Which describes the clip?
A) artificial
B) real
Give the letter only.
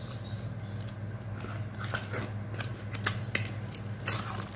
B